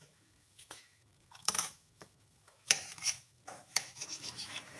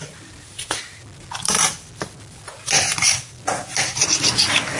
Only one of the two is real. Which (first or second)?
second